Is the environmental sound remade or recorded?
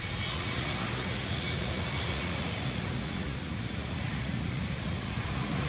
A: remade